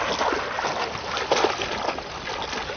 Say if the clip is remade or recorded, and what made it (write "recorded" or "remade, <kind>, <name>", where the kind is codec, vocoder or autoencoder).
recorded